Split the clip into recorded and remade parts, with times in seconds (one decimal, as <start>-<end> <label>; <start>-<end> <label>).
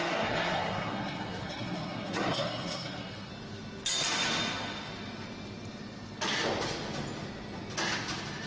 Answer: 0.0-3.3 remade; 3.3-8.5 recorded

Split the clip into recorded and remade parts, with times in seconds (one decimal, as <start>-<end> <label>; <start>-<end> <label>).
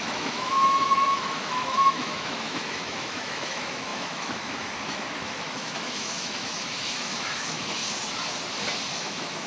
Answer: 0.0-7.8 remade; 7.8-8.9 recorded; 8.9-9.5 remade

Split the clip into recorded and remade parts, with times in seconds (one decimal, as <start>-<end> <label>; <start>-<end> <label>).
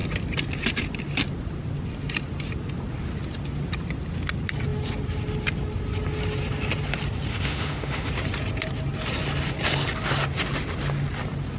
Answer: 0.0-7.3 recorded; 7.3-8.1 remade; 8.1-11.6 recorded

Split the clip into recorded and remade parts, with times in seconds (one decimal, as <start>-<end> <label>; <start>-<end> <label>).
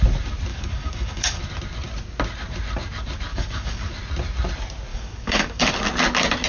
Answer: 0.0-0.5 recorded; 0.5-1.4 remade; 1.4-3.3 recorded; 3.3-3.9 remade; 3.9-4.9 recorded; 4.9-5.7 remade; 5.7-6.5 recorded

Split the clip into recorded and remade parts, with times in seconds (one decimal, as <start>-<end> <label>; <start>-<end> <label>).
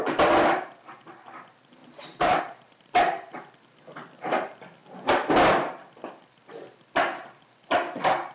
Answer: 0.0-1.8 recorded; 1.8-2.4 remade; 2.4-8.3 recorded